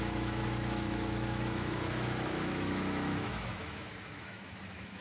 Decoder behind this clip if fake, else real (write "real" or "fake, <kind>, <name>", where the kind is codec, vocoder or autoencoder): fake, autoencoder, DAC-VAE